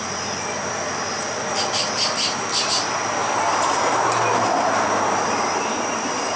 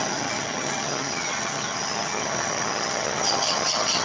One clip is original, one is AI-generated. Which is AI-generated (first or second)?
second